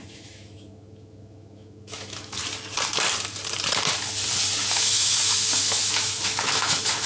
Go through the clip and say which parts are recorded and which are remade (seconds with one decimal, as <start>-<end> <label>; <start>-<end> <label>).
0.0-2.4 remade; 2.4-4.6 recorded; 4.6-7.1 remade